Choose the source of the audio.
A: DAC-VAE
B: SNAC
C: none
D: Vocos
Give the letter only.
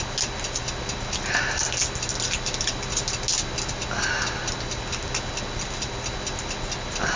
C